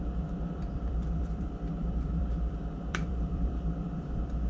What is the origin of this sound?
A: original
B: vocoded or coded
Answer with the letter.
B